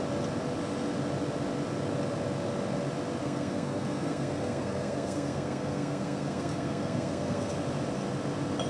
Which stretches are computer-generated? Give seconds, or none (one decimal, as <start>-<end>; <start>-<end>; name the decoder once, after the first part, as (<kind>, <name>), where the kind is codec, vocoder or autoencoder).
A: 3.2-7.5 (codec, SNAC)